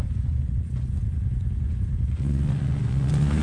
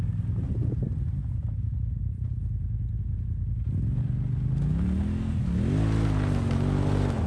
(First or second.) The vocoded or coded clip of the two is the first